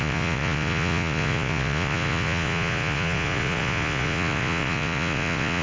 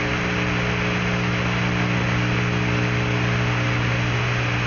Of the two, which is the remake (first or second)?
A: first